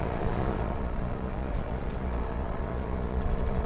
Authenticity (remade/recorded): remade